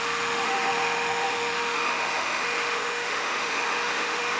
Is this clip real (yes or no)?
no